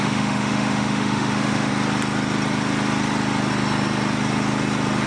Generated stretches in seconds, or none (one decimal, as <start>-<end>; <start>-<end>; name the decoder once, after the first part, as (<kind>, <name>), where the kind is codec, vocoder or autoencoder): 0.0-1.7 (autoencoder, DAC-VAE)